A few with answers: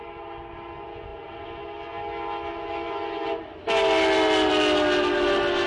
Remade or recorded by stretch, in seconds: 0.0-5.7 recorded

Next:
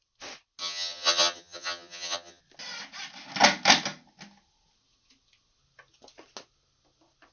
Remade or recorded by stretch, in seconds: 0.0-0.6 recorded; 0.6-2.4 remade; 2.4-7.3 recorded

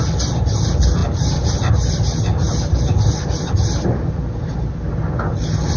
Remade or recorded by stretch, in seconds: 0.0-1.0 recorded; 1.0-1.7 remade; 1.7-2.3 recorded; 2.3-3.5 remade; 3.5-5.8 recorded